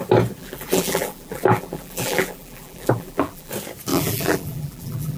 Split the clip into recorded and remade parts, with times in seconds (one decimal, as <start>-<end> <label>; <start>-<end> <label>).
0.0-0.4 recorded; 0.4-3.5 remade; 3.5-3.9 recorded; 3.9-5.2 remade